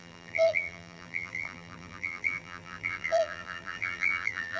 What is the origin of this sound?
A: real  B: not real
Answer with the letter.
B